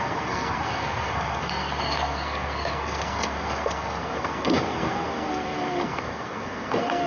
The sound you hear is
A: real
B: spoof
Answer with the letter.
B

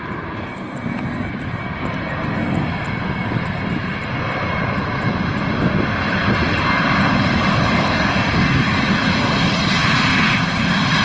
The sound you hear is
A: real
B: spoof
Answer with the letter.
A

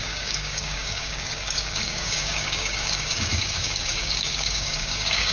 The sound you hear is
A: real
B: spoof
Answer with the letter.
B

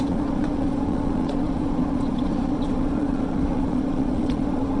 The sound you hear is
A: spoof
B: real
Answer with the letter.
A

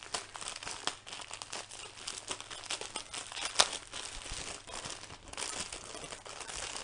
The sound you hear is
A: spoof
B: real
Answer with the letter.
B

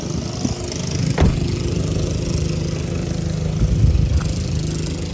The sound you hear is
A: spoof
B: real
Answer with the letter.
B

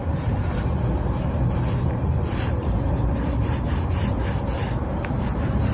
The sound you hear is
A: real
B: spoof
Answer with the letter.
A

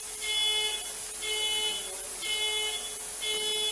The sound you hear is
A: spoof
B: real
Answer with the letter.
B